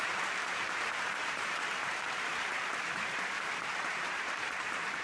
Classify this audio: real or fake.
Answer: fake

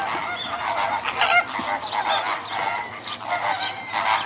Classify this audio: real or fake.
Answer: real